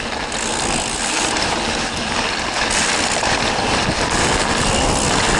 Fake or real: real